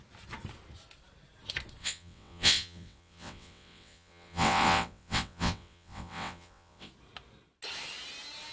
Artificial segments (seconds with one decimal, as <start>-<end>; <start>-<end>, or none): 1.8-6.9